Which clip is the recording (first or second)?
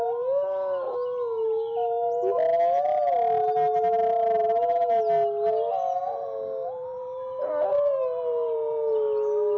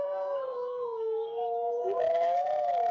first